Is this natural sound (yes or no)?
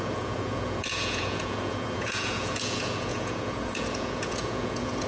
no